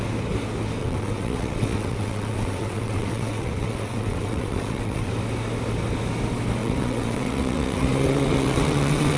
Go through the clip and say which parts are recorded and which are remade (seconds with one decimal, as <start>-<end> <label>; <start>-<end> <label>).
0.0-0.8 recorded; 0.8-5.1 remade; 5.1-6.6 recorded; 6.6-9.2 remade